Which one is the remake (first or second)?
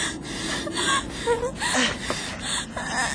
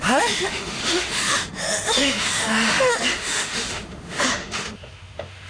second